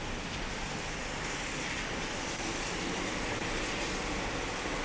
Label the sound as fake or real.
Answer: real